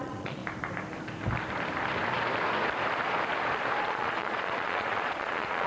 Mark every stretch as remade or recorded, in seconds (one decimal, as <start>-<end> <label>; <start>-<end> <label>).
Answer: 0.0-0.4 remade; 0.4-3.8 recorded; 3.8-5.7 remade